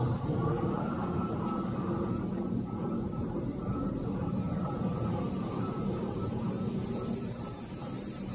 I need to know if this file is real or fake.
fake